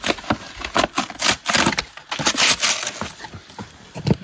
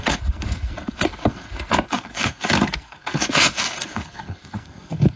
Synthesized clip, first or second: second